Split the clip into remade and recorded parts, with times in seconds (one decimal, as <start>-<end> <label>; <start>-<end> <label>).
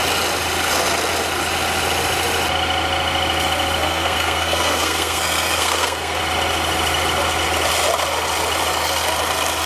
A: 0.0-3.8 recorded; 3.8-6.2 remade; 6.2-9.7 recorded